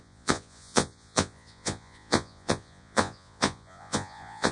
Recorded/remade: remade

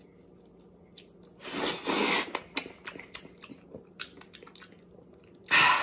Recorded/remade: recorded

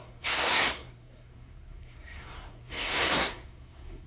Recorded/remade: remade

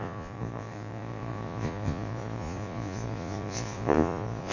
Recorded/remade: remade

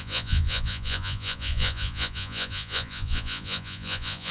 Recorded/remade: remade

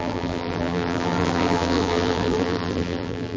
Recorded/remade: remade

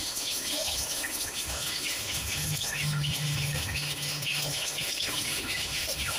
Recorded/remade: remade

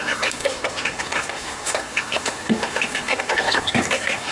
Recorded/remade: remade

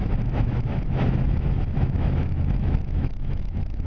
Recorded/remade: remade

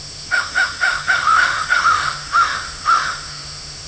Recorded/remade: remade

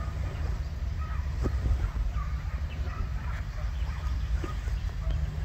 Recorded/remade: recorded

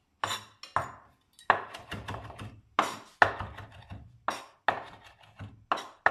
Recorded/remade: recorded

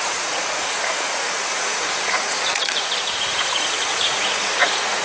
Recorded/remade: remade